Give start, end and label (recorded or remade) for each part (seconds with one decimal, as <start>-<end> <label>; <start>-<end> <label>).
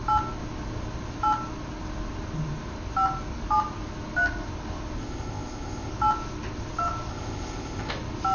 0.0-5.0 recorded; 5.0-5.9 remade; 5.9-7.1 recorded; 7.1-7.9 remade; 7.9-8.3 recorded